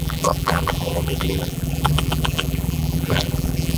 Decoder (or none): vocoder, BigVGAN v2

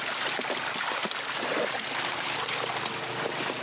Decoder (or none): vocoder, BigVGAN v2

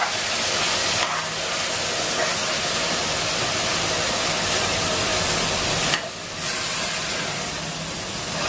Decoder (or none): none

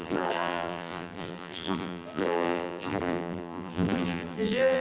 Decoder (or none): vocoder, BigVGAN v2